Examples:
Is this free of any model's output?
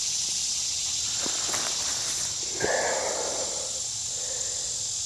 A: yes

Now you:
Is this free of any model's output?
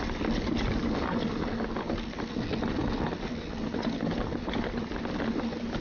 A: yes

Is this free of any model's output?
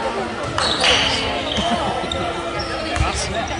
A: yes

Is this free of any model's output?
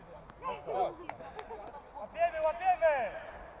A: yes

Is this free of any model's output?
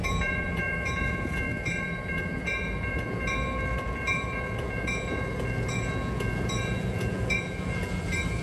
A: no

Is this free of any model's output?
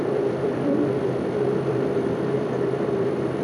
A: no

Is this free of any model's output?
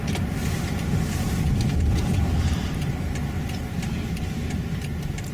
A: no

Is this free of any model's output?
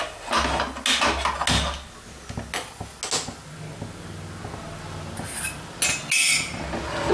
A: yes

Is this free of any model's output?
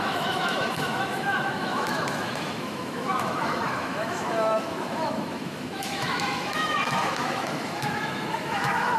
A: no